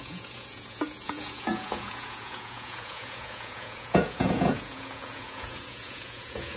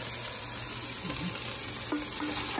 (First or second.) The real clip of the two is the second